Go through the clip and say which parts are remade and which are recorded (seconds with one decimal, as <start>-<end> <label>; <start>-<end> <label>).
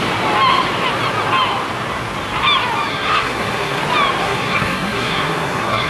0.0-2.9 recorded; 2.9-3.8 remade; 3.8-4.2 recorded; 4.2-5.9 remade